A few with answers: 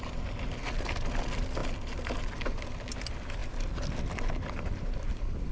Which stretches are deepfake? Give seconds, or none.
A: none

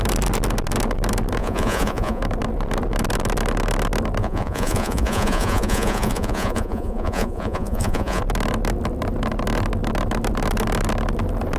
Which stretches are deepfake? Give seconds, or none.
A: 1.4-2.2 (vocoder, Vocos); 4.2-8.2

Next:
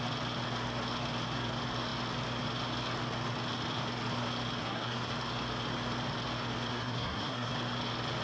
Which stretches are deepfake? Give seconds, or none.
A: 4.6-5.1 (codec, SNAC); 6.7-7.5

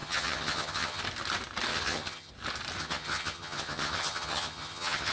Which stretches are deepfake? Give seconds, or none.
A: 0.0-1.0 (vocoder, HiFi-GAN); 1.7-2.3; 2.8-5.1

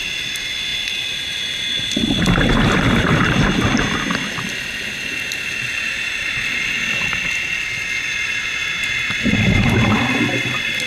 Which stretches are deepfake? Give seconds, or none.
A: none

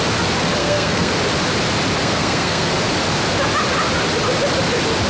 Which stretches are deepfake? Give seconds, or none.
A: 0.6-1.1 (codec, SNAC); 2.0-2.7